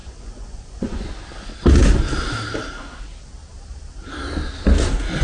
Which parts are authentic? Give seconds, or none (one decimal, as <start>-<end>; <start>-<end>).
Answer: 1.1-5.2